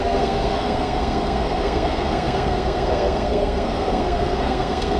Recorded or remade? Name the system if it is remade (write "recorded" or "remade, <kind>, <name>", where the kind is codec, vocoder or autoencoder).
remade, codec, SNAC